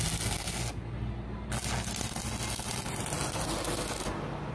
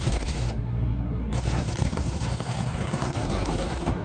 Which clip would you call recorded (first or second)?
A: first